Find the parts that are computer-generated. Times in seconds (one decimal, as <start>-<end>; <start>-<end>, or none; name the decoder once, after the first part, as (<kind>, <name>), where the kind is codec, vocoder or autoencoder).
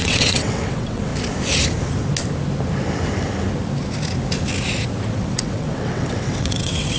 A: 0.0-1.1 (vocoder, WaveNeXt); 5.2-7.0